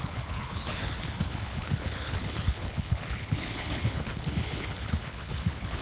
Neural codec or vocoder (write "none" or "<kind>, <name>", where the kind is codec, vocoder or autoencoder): codec, HILCodec